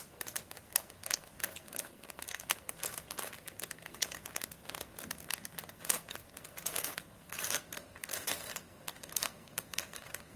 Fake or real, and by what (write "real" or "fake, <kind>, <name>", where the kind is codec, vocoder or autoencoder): fake, codec, SNAC